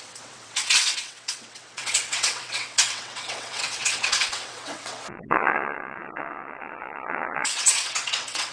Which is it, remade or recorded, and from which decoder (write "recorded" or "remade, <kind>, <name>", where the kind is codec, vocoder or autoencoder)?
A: remade, vocoder, WaveNeXt